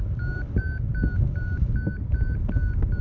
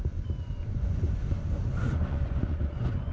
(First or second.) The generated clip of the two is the second